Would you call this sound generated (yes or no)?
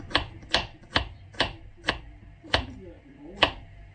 no